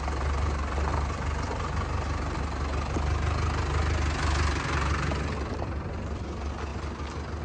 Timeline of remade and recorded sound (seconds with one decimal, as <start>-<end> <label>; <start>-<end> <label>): 0.0-7.4 recorded